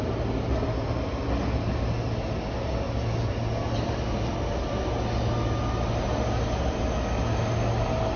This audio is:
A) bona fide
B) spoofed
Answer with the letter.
A